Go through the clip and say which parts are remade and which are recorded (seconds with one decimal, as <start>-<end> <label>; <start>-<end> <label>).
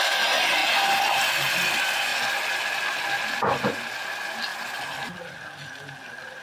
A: 0.0-0.6 recorded; 0.6-1.3 remade; 1.3-2.1 recorded; 2.1-3.4 remade; 3.4-4.5 recorded; 4.5-5.8 remade; 5.8-6.4 recorded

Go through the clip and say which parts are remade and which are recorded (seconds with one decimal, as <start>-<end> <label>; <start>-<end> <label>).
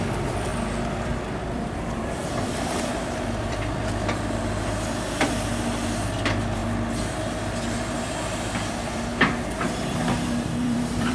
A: 0.0-0.5 remade; 0.5-1.2 recorded; 1.2-6.6 remade; 6.6-8.0 recorded; 8.0-9.1 remade; 9.1-9.9 recorded; 9.9-11.1 remade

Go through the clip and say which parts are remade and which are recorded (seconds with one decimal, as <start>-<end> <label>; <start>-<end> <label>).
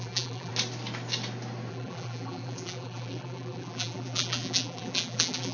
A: 0.0-0.5 remade; 0.5-1.7 recorded; 1.7-5.5 remade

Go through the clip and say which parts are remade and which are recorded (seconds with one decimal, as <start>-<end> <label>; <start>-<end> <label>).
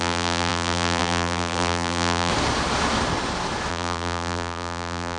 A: 0.0-2.3 remade; 2.3-3.7 recorded; 3.7-5.2 remade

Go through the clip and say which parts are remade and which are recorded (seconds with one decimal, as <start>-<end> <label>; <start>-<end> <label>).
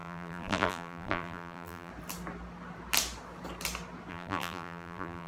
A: 0.0-1.9 remade; 1.9-4.1 recorded; 4.1-5.3 remade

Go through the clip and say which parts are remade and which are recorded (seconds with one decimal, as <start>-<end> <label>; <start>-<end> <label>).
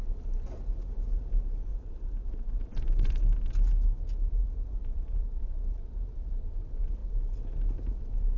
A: 0.0-1.7 recorded; 1.7-3.3 remade; 3.3-4.4 recorded; 4.4-5.6 remade; 5.6-8.4 recorded